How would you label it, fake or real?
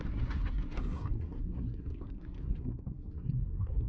fake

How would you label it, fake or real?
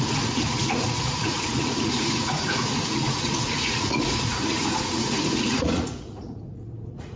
fake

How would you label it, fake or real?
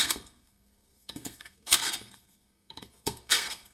fake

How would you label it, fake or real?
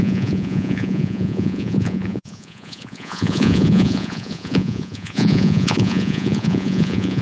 fake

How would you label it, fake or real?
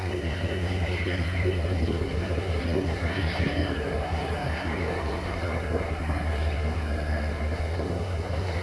fake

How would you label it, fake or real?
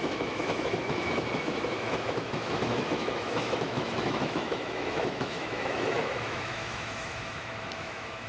fake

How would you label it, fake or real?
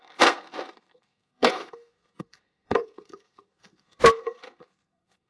fake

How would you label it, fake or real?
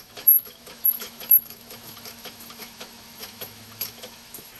fake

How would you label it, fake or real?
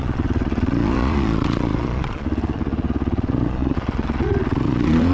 fake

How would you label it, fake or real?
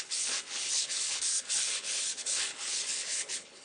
fake